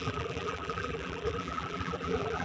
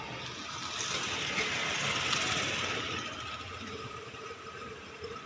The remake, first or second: first